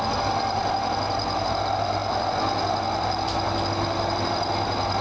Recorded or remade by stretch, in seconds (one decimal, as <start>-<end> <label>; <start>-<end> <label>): 0.0-5.0 recorded